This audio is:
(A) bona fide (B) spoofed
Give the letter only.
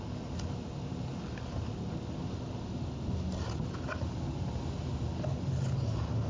A